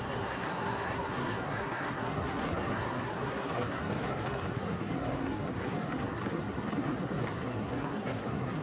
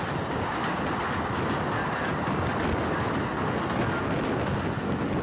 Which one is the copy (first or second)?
first